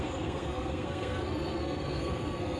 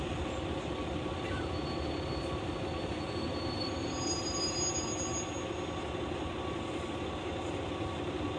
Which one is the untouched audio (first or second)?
second